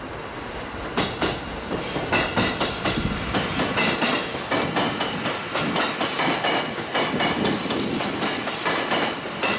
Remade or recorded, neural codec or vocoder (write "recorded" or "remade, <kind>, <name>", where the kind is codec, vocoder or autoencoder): recorded